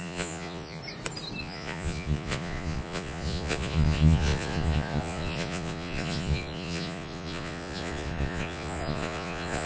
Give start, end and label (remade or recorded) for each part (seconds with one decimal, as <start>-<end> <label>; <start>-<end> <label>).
0.0-0.8 remade; 0.8-1.4 recorded; 1.4-9.7 remade

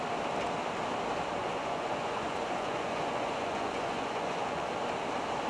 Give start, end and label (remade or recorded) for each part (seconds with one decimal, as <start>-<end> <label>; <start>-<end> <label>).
0.0-1.4 recorded; 1.4-4.7 remade; 4.7-5.5 recorded

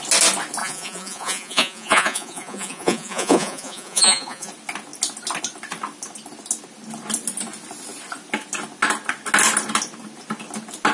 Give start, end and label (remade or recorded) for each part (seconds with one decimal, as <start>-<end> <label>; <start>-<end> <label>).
0.0-0.6 recorded; 0.6-4.5 remade; 4.5-10.9 recorded

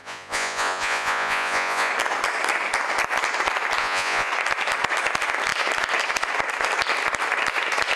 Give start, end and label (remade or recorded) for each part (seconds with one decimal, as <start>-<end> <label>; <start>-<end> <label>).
0.0-1.9 remade; 1.9-3.8 recorded; 3.8-4.3 remade; 4.3-8.0 recorded

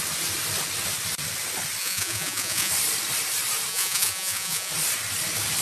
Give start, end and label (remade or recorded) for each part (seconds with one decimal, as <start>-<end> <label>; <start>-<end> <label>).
0.0-1.8 recorded; 1.8-2.7 remade; 2.7-3.7 recorded; 3.7-4.7 remade; 4.7-5.6 recorded

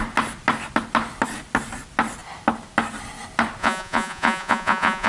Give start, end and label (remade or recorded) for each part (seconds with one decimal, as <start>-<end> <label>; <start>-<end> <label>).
0.0-3.6 recorded; 3.6-5.1 remade

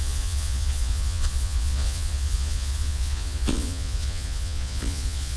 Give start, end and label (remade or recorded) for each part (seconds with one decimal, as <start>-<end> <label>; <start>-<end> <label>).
0.0-5.4 remade